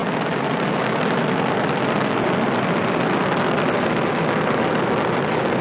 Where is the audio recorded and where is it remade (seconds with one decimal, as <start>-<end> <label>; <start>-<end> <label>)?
0.0-5.6 recorded